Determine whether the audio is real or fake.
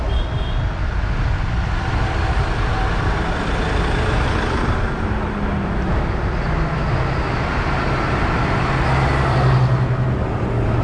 real